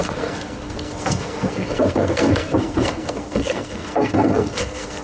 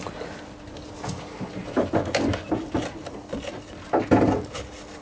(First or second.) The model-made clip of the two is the first